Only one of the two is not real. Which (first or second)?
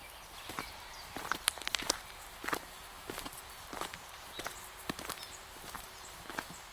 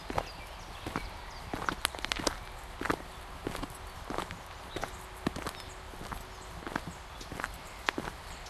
first